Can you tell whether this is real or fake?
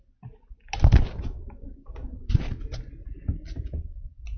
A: real